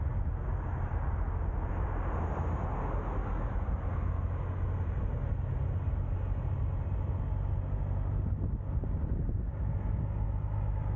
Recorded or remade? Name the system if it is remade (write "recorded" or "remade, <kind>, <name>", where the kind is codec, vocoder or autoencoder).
recorded